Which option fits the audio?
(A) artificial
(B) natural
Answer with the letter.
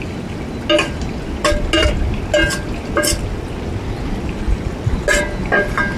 B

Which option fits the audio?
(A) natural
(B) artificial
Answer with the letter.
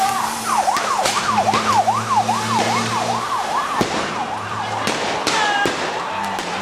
B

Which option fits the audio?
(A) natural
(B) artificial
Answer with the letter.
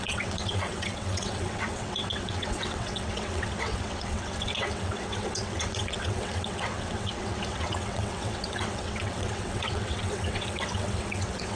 B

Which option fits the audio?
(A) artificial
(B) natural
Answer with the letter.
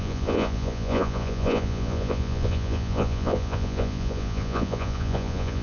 A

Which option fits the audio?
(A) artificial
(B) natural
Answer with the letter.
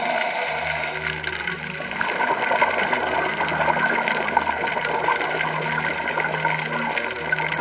B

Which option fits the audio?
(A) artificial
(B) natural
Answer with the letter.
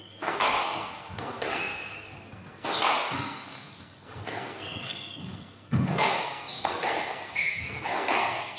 A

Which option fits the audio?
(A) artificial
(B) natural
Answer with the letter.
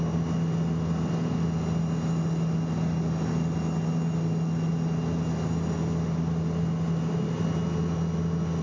B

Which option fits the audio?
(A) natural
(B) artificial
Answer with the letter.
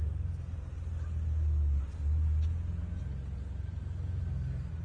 A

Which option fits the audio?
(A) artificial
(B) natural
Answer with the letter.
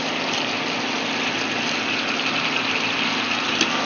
B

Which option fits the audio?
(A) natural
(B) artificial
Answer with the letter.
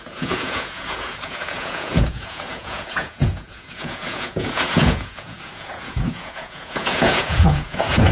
B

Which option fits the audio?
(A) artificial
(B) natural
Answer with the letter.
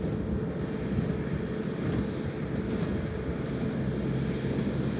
B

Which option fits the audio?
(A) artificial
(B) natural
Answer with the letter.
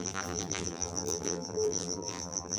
A